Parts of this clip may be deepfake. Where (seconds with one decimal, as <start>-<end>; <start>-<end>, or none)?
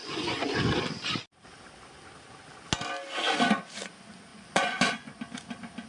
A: 0.0-0.8; 4.3-5.2